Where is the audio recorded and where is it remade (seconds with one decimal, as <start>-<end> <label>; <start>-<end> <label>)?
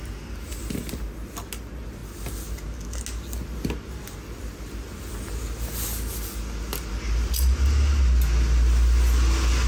0.0-9.7 recorded